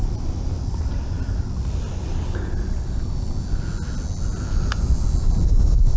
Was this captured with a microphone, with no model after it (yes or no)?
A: yes